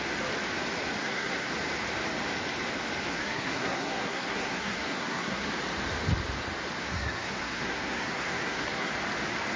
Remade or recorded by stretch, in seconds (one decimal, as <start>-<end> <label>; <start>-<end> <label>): 0.0-1.0 recorded; 1.0-1.5 remade; 1.5-3.1 recorded; 3.1-5.5 remade; 5.5-6.8 recorded; 6.8-8.9 remade; 8.9-9.6 recorded